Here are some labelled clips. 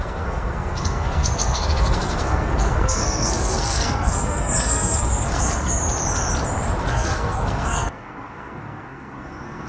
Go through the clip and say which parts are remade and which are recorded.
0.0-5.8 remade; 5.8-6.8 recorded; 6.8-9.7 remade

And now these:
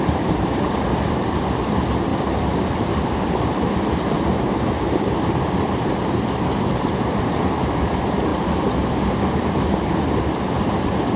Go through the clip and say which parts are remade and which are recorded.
0.0-11.2 recorded

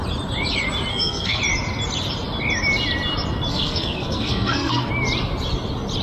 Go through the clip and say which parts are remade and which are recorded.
0.0-0.9 recorded; 0.9-1.4 remade; 1.4-3.5 recorded; 3.5-4.9 remade; 4.9-6.0 recorded

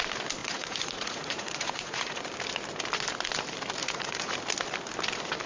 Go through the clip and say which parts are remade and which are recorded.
0.0-0.4 recorded; 0.4-2.2 remade; 2.2-3.8 recorded; 3.8-4.4 remade; 4.4-5.5 recorded

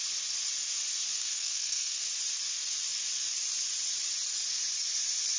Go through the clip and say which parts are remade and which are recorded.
0.0-1.1 recorded; 1.1-2.0 remade; 2.0-5.4 recorded

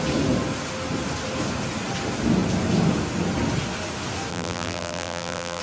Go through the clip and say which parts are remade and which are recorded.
0.0-4.3 recorded; 4.3-5.6 remade